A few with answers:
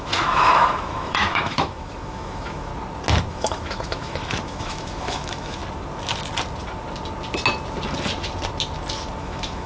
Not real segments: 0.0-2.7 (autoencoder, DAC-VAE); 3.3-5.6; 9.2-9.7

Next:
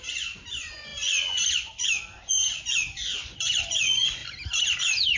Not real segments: 0.0-4.2 (vocoder, Vocos); 4.8-5.2

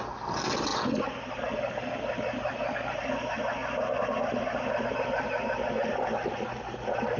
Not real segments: none